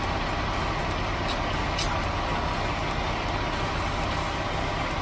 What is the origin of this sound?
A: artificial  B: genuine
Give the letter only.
B